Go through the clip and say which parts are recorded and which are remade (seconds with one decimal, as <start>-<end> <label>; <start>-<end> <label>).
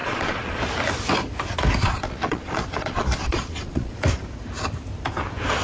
0.0-0.6 remade; 0.6-1.8 recorded; 1.8-4.0 remade; 4.0-5.6 recorded